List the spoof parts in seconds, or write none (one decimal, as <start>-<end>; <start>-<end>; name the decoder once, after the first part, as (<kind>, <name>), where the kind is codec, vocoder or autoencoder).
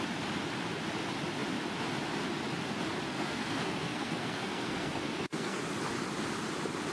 3.1-5.6 (codec, SNAC)